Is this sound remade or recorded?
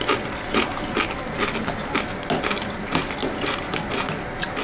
recorded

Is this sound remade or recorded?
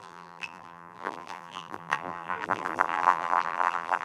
remade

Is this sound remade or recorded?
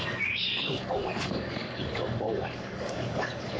remade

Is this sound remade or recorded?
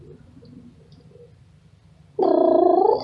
remade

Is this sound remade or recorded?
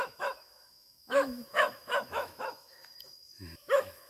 remade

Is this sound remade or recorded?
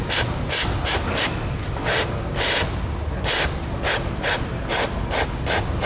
recorded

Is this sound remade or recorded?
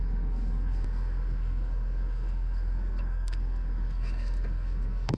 remade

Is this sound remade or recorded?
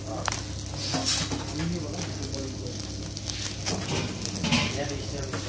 recorded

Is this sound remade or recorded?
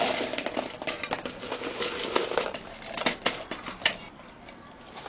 recorded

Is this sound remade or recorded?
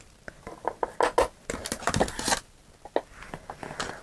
recorded